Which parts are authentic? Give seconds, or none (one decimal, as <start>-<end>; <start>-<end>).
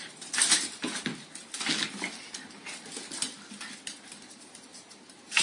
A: 1.1-4.3